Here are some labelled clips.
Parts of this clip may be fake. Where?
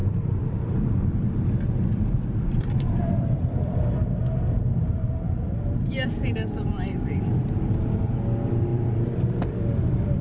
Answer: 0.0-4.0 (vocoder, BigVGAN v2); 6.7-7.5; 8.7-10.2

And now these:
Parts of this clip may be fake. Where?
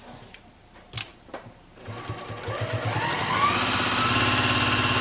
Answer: 1.1-2.3 (vocoder, BigVGAN v2)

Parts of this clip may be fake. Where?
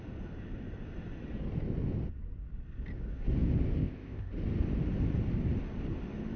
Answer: 3.8-4.3 (codec, ZipCodec)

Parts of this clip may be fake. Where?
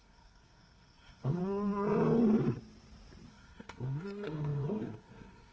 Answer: 0.0-1.4 (codec, SNAC); 3.3-5.5